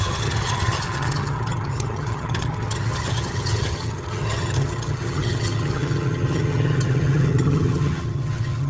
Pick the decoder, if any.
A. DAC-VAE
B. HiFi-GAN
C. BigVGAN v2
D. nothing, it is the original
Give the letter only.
B